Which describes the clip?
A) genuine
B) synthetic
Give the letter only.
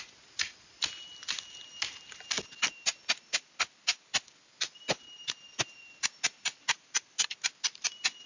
A